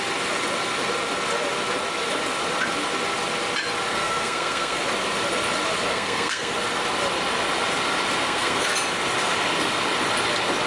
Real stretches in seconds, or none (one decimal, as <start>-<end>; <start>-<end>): 0.0-3.9; 4.8-5.9; 6.5-8.2; 8.7-10.7

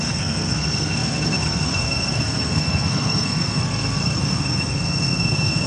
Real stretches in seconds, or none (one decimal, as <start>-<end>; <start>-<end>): none

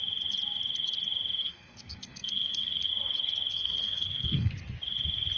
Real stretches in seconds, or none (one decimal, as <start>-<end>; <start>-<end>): 0.0-1.4; 2.9-3.5; 4.5-5.4

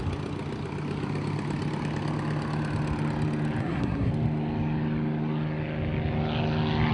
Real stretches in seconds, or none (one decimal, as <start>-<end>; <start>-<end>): 0.0-3.6; 4.1-6.9

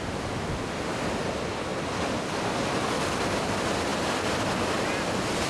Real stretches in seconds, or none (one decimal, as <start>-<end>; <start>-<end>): 0.0-5.5

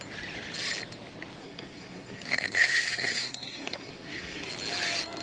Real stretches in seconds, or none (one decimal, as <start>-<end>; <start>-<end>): 0.0-1.4; 4.5-5.2

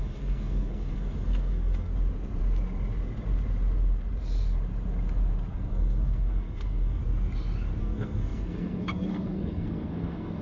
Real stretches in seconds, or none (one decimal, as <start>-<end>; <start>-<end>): 1.9-5.5; 7.0-7.8